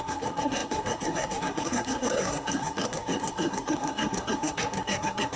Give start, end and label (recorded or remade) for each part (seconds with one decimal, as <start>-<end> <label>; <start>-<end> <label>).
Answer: 0.0-5.4 remade